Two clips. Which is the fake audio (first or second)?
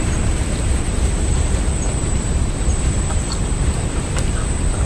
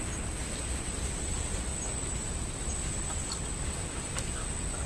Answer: first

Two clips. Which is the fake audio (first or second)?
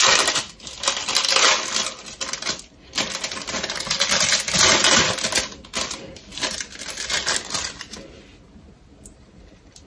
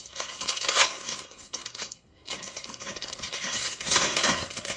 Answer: second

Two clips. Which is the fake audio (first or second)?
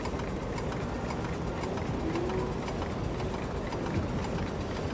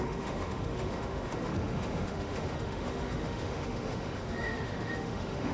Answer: second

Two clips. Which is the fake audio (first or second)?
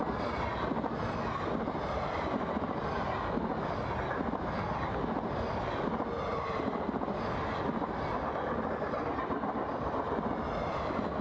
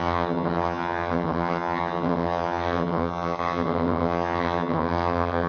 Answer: second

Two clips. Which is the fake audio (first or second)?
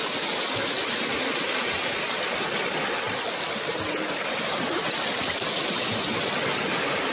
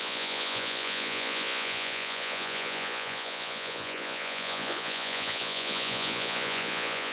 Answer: second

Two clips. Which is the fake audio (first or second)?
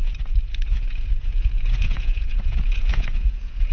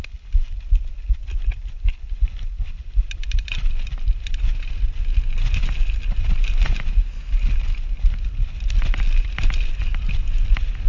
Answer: first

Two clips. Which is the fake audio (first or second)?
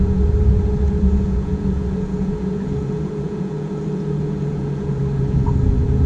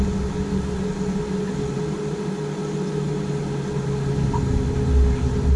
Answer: first